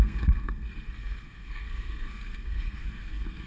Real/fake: fake